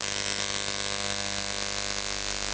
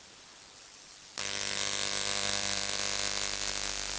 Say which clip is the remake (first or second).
second